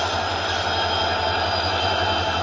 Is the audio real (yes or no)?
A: yes